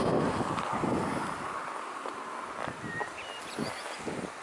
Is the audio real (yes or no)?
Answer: yes